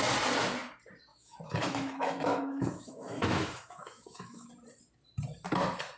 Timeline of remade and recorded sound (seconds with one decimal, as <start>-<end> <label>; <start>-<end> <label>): 0.0-1.1 recorded; 1.1-4.5 remade; 4.5-6.0 recorded

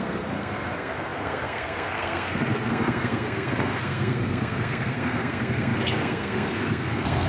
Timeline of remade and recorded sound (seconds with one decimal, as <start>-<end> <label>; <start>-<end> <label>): 0.0-7.3 remade

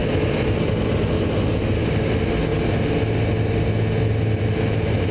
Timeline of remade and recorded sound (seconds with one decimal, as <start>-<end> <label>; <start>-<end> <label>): 0.0-5.1 recorded

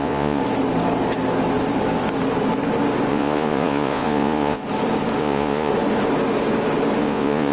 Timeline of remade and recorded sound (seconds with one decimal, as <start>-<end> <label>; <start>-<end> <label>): 0.0-0.4 remade; 0.4-3.1 recorded; 3.1-4.6 remade; 4.6-5.2 recorded; 5.2-5.7 remade; 5.7-7.0 recorded; 7.0-7.5 remade